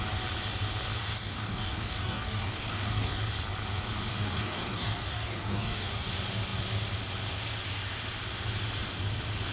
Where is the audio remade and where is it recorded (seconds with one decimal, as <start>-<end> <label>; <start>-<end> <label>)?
0.0-1.0 recorded; 1.0-3.2 remade; 3.2-4.1 recorded; 4.1-6.1 remade; 6.1-9.5 recorded

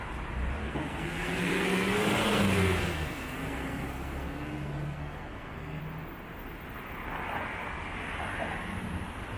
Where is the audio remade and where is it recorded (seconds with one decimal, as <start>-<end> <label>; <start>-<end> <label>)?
0.0-0.6 recorded; 0.6-5.8 remade; 5.8-9.4 recorded

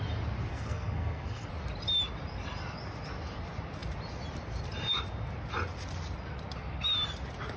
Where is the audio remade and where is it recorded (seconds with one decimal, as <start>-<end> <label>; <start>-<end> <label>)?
0.0-0.5 recorded; 0.5-1.5 remade; 1.5-7.6 recorded

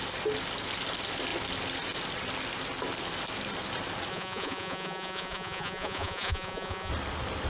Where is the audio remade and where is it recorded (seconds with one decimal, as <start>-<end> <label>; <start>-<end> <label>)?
0.0-4.1 recorded; 4.1-6.9 remade; 6.9-7.5 recorded

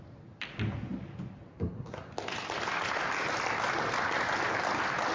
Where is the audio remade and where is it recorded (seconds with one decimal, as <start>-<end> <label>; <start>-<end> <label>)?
0.0-1.5 recorded; 1.5-2.1 remade; 2.1-5.1 recorded

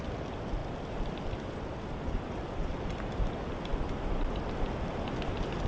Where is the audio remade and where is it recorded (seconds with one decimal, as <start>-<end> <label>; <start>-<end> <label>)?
0.0-5.7 remade

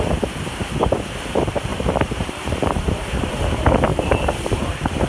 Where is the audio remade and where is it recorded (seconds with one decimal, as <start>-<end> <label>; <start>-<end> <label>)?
0.0-1.7 recorded; 1.7-3.3 remade; 3.3-3.9 recorded; 3.9-5.1 remade

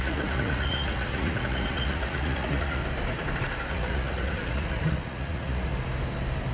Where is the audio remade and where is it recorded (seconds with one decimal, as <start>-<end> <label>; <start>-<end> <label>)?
0.0-2.8 remade; 2.8-3.7 recorded; 3.7-5.7 remade; 5.7-6.5 recorded